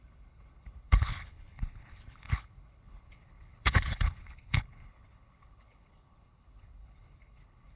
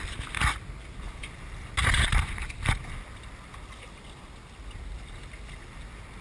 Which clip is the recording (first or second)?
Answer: second